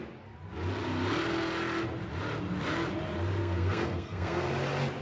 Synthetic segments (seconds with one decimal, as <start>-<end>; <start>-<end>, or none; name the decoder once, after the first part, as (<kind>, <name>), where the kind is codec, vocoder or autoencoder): 3.4-4.5 (codec, SNAC)